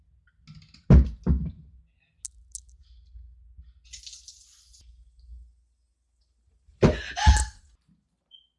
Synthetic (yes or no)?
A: no